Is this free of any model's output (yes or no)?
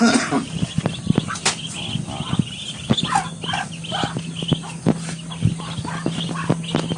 yes